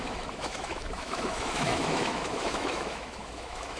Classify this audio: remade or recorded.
remade